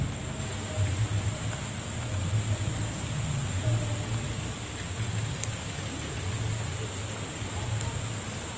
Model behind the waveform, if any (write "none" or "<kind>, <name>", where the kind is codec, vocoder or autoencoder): none